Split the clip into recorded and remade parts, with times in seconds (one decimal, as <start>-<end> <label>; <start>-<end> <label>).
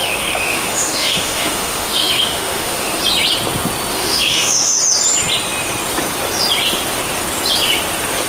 0.0-3.0 remade; 3.0-3.9 recorded; 3.9-4.8 remade; 4.8-8.3 recorded